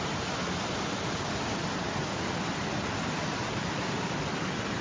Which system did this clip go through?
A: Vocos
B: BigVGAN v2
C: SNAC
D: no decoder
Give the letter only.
D